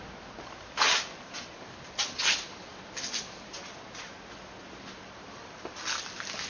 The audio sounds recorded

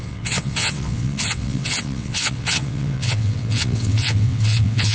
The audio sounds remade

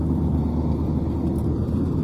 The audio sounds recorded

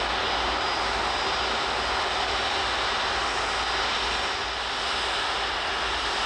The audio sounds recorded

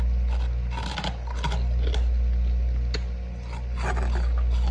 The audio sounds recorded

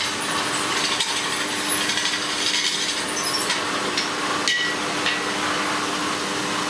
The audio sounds recorded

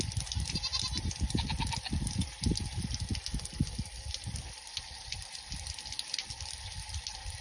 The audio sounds recorded